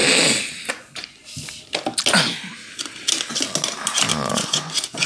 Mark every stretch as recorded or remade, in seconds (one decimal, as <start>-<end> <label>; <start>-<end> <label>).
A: 0.0-0.7 recorded; 0.7-1.2 remade; 1.2-4.3 recorded; 4.3-5.1 remade